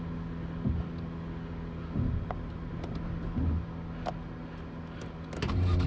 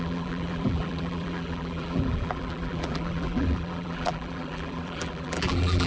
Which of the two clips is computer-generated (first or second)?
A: second